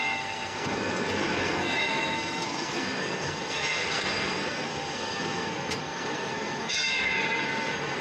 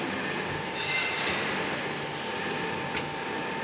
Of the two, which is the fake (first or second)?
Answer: first